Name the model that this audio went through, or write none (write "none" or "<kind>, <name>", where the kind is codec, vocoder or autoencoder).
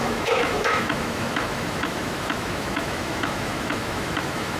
autoencoder, DAC-VAE